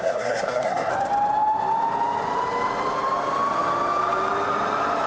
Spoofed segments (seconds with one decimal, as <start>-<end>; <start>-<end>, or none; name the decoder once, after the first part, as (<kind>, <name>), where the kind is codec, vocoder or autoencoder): 0.0-0.9 (codec, SNAC)